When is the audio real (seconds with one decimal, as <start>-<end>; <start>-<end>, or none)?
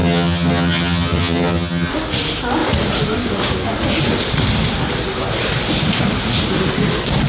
1.9-7.3